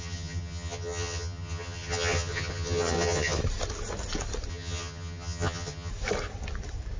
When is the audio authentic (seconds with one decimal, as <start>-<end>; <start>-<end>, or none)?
3.4-4.5; 5.9-7.0